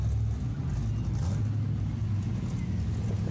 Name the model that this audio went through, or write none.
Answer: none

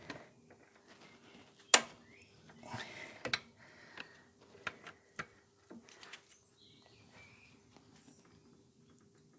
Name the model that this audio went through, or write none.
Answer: none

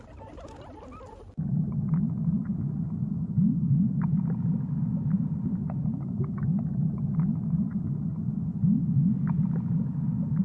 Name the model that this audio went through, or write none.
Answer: none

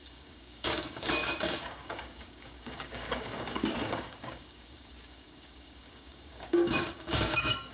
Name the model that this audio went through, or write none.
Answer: codec, DAC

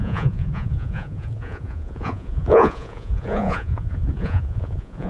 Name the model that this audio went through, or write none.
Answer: vocoder, Vocos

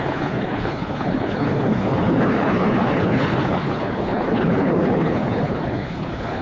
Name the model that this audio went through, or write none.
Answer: codec, HILCodec